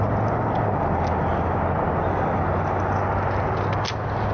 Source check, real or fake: real